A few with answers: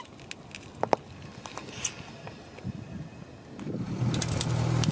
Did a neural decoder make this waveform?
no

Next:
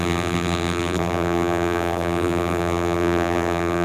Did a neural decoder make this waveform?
yes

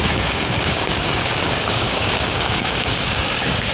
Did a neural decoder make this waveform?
yes